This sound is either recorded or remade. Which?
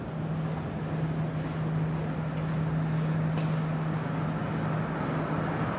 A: recorded